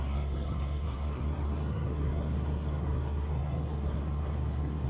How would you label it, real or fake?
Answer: fake